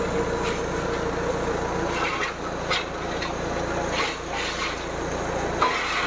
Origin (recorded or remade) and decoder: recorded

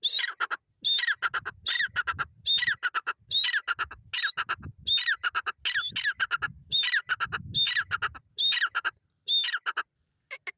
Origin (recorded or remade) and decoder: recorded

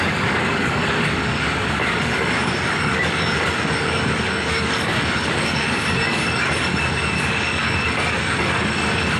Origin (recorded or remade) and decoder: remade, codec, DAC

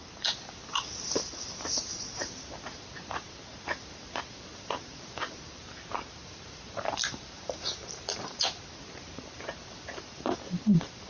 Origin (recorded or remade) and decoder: remade, vocoder, BigVGAN v2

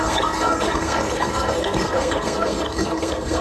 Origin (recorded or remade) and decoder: remade, codec, SNAC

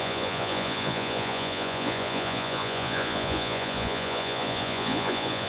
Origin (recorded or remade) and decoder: remade, vocoder, Vocos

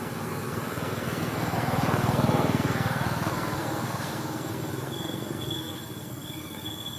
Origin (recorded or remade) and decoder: remade, codec, SNAC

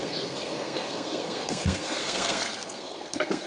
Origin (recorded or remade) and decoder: remade, codec, SNAC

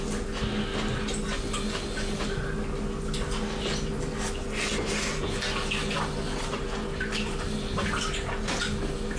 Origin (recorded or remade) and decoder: recorded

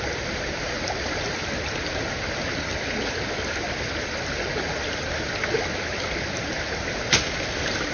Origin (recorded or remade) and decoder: recorded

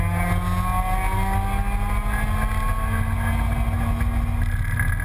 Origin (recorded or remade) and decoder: recorded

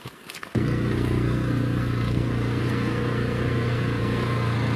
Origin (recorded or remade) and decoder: remade, codec, SNAC